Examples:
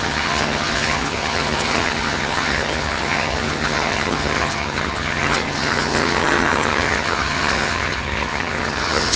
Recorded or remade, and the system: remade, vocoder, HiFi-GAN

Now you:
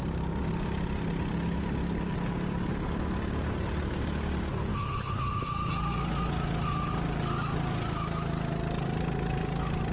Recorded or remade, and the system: recorded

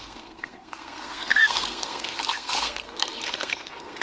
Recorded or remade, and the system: remade, codec, SNAC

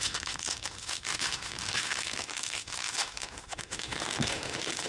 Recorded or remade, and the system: remade, autoencoder, DAC-VAE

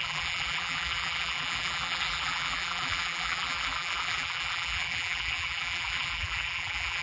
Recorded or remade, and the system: remade, vocoder, BigVGAN v2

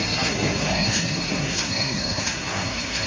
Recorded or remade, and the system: remade, codec, SNAC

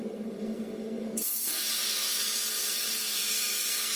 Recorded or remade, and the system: remade, codec, SNAC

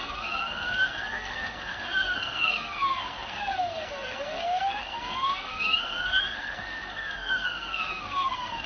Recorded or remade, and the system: remade, codec, SNAC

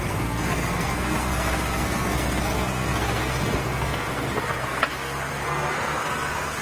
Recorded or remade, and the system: remade, codec, SNAC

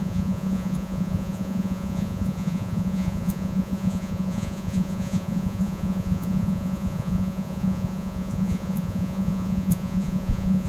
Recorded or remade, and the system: remade, vocoder, Vocos